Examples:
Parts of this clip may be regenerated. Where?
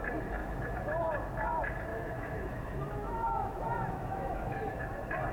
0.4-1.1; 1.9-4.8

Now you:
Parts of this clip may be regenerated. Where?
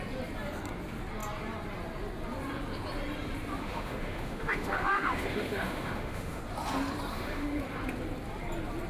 3.6-6.4; 7.1-7.6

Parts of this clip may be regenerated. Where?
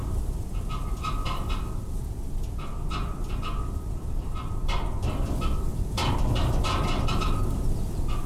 none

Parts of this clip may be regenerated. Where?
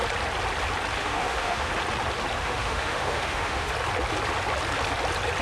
1.0-1.7; 2.4-3.7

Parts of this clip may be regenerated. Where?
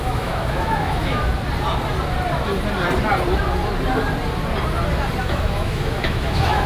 0.0-1.2; 5.2-6.7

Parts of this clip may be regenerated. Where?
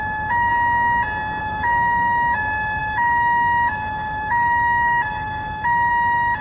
0.0-0.5; 1.4-6.4